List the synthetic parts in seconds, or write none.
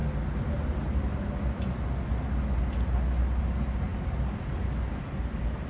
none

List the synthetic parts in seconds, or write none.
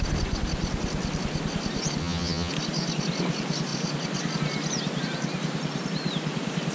2.0-2.5 (vocoder, HiFi-GAN)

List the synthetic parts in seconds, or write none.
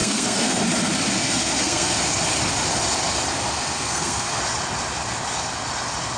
0.0-0.6 (codec, SNAC); 1.2-2.0; 3.3-4.4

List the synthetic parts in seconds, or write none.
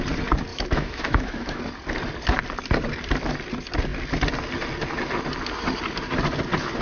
0.5-1.6 (autoencoder, DAC-VAE)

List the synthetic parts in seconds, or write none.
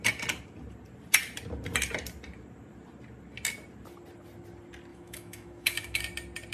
4.9-6.0 (autoencoder, DAC-VAE)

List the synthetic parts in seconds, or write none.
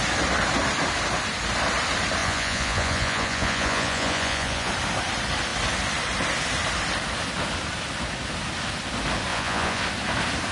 2.2-4.7 (vocoder, Vocos); 9.3-9.8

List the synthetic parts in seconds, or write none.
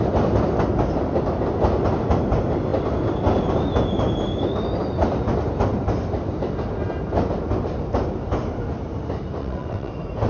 9.4-9.9 (vocoder, WaveNeXt)